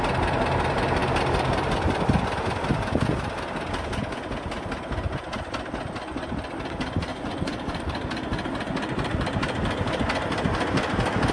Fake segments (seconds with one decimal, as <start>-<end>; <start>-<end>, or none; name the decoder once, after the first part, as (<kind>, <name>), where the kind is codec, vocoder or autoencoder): 7.1-7.8 (vocoder, Vocos)